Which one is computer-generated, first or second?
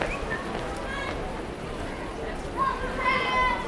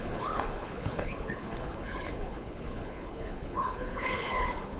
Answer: second